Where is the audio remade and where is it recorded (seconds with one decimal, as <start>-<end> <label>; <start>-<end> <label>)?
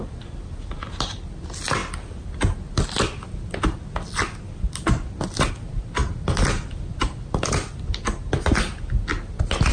0.0-9.7 recorded